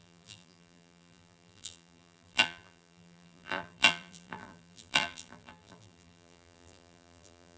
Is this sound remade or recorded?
remade